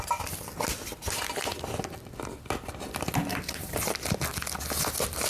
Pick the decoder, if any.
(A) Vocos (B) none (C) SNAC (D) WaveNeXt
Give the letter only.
B